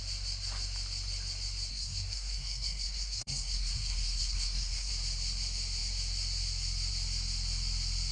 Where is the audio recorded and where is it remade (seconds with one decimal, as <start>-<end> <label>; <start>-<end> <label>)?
0.0-1.7 recorded; 1.7-4.9 remade; 4.9-8.1 recorded